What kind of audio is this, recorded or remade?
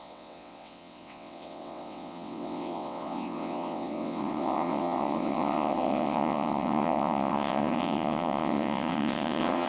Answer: remade